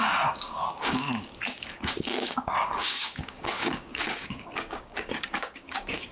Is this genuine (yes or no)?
no